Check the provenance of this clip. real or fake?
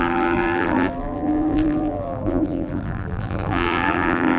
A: fake